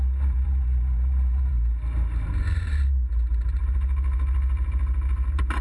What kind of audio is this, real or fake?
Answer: fake